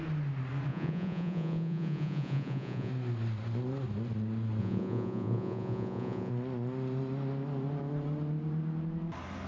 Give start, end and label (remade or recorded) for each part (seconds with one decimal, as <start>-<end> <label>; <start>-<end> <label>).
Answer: 0.0-0.7 recorded; 0.7-2.9 remade; 2.9-4.6 recorded; 4.6-6.3 remade; 6.3-9.5 recorded